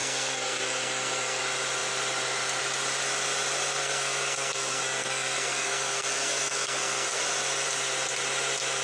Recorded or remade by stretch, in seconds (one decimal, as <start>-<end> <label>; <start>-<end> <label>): 0.0-1.4 remade; 1.4-3.8 recorded; 3.8-7.2 remade; 7.2-8.8 recorded